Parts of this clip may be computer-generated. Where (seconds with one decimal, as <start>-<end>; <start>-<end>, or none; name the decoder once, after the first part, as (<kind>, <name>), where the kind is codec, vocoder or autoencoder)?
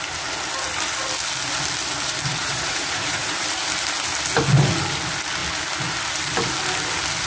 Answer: 2.4-3.3 (vocoder, Vocos)